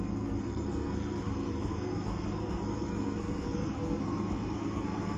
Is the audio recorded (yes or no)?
no